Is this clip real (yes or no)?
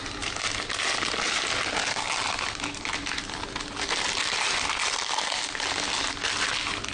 yes